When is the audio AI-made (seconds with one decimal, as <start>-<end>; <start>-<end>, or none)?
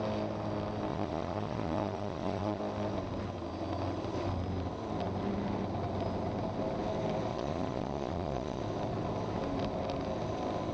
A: 0.9-2.6; 7.3-8.6